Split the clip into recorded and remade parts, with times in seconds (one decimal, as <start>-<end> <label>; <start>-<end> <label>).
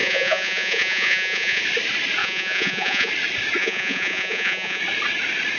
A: 0.0-1.6 remade; 1.6-2.2 recorded; 2.2-3.1 remade; 3.1-3.6 recorded; 3.6-4.8 remade; 4.8-5.6 recorded